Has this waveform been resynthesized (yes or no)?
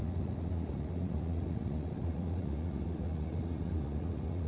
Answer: yes